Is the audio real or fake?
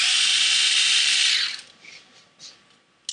real